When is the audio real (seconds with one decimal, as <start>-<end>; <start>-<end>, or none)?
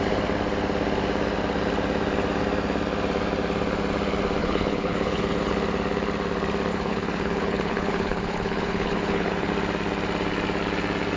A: 0.0-4.4; 5.5-6.7; 9.5-11.2